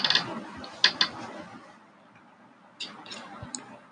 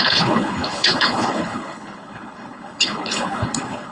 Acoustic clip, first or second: first